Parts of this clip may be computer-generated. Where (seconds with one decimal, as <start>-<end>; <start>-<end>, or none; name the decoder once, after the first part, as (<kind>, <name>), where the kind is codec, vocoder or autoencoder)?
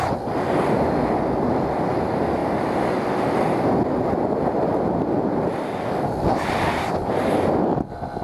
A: none